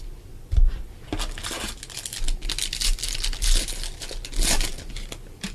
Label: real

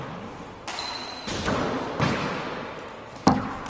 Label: real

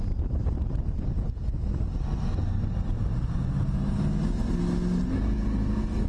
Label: real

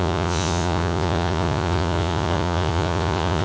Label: fake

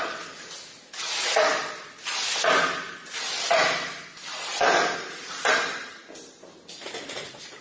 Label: real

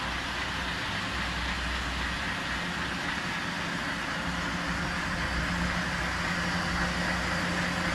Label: real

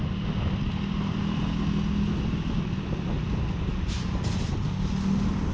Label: real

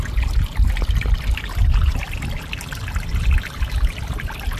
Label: real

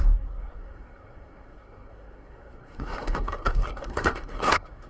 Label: fake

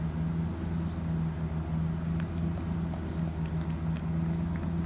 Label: real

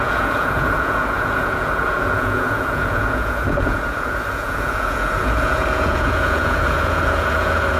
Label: fake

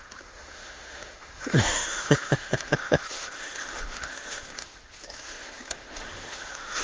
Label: fake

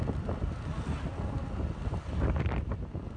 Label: real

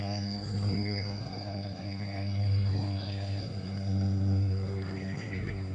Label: fake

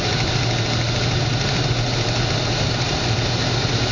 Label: real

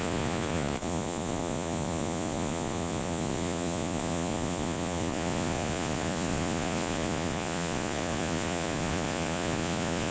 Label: fake